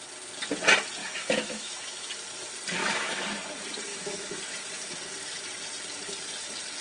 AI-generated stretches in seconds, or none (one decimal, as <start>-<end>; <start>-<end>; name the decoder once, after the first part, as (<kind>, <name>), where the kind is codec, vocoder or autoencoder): 1.0-2.1 (autoencoder, DAC-VAE); 2.8-3.3; 3.9-4.4

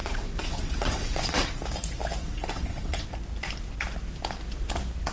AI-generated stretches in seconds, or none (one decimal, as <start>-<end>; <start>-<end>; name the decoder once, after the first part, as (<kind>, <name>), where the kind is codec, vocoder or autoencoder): 0.0-1.6 (vocoder, WaveNeXt); 2.2-3.1

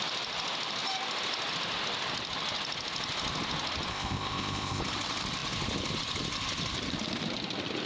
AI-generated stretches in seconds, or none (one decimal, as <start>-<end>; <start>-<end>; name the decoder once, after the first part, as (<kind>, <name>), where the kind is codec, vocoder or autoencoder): 3.9-4.8 (codec, ZipCodec)

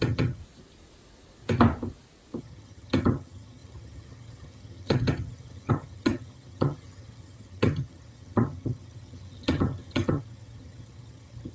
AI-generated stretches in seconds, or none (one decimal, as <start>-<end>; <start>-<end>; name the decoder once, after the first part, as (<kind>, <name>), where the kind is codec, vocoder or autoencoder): 0.0-0.4 (vocoder, HiFi-GAN); 2.4-11.5

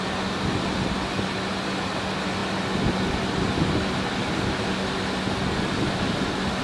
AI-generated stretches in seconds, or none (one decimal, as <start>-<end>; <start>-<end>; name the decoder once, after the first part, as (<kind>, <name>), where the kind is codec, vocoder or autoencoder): none